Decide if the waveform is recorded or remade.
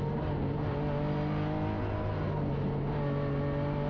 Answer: recorded